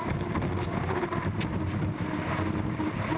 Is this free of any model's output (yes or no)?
no